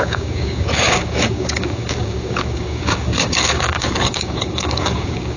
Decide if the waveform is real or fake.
fake